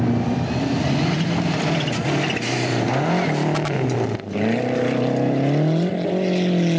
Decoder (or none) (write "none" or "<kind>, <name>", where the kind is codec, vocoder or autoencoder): none